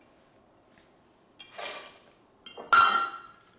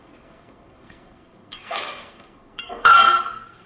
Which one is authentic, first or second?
first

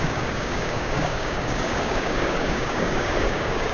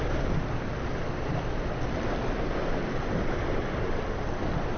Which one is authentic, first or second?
second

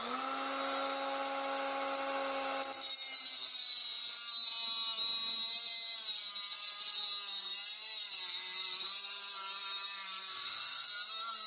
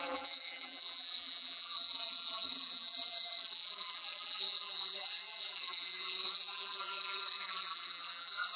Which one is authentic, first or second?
first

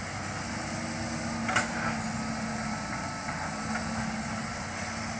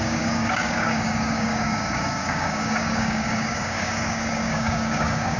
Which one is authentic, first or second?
first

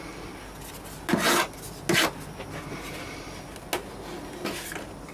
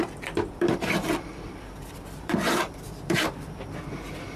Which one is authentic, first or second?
first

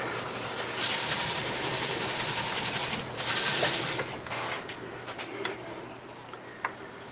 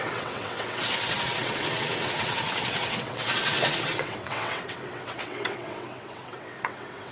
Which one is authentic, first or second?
first